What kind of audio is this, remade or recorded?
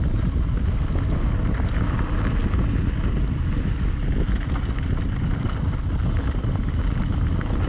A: recorded